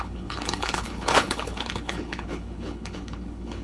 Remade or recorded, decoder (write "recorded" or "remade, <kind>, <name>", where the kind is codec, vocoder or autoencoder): remade, codec, HILCodec